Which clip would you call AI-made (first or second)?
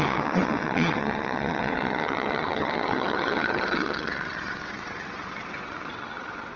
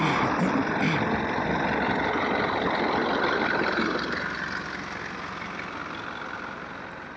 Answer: first